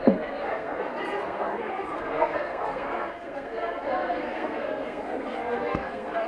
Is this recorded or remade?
remade